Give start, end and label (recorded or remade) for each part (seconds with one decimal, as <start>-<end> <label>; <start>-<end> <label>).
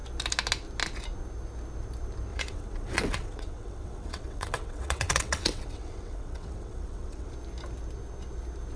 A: 0.0-2.3 recorded; 2.3-7.3 remade; 7.3-8.8 recorded